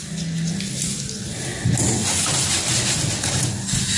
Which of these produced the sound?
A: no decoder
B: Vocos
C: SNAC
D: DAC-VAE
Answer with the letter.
A